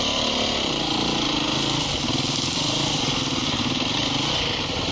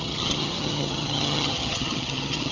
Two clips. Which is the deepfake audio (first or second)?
second